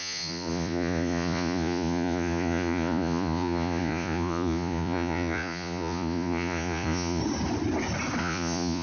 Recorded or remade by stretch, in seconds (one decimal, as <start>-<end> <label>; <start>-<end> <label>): 0.0-7.2 remade; 7.2-8.2 recorded; 8.2-8.8 remade